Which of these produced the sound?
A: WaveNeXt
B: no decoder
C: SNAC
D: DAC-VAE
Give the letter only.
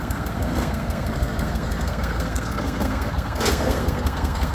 C